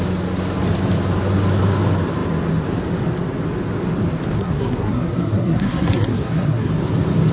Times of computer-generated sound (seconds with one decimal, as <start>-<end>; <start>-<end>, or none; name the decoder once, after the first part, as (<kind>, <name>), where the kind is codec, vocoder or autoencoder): 4.4-6.7 (codec, SNAC)